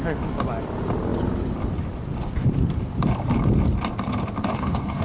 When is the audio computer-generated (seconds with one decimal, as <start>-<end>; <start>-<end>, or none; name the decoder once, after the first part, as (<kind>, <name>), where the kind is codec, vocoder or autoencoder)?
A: 4.5-5.0 (codec, DAC)